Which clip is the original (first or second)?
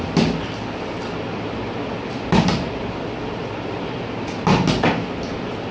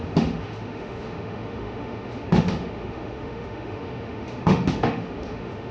first